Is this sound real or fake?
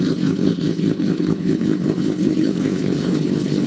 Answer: fake